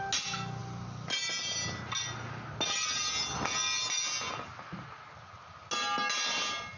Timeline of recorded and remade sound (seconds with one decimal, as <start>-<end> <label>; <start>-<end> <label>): 0.0-6.8 recorded